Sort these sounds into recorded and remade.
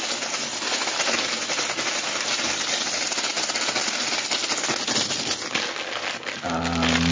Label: recorded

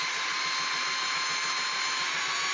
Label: recorded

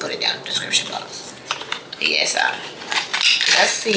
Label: recorded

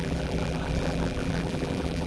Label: remade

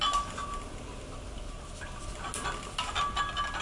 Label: recorded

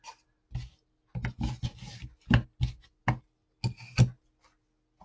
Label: recorded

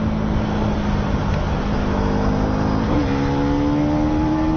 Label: recorded